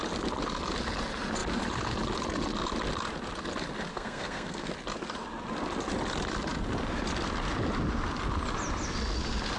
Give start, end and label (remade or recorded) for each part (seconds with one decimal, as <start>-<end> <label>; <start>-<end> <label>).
0.0-3.9 recorded; 3.9-4.7 remade; 4.7-9.6 recorded